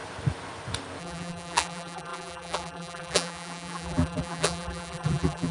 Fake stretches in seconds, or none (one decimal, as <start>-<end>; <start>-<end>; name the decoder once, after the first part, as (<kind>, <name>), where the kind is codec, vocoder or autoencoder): 1.0-5.5 (vocoder, BigVGAN v2)